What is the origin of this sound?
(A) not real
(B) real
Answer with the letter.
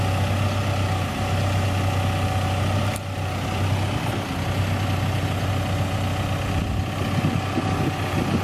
B